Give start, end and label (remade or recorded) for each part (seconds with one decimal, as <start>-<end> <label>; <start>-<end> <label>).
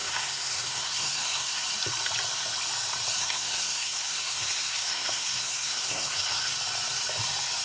0.0-1.6 remade; 1.6-3.2 recorded; 3.2-6.5 remade; 6.5-7.6 recorded